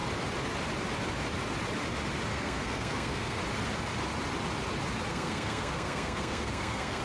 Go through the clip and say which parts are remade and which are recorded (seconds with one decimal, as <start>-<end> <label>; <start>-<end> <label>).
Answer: 0.0-2.3 recorded; 2.3-3.4 remade; 3.4-5.1 recorded; 5.1-7.0 remade